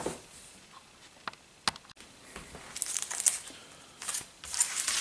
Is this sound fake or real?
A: real